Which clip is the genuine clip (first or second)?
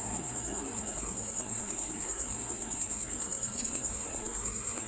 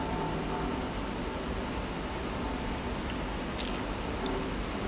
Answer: second